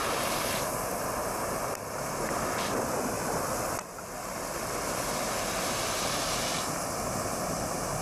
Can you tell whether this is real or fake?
real